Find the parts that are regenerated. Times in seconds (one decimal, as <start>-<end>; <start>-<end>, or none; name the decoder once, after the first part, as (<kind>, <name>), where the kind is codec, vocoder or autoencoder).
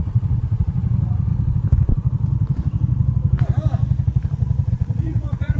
0.0-1.3 (vocoder, Vocos); 4.7-5.6